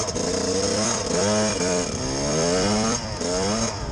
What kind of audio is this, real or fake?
fake